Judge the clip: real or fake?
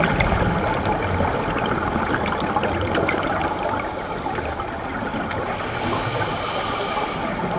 real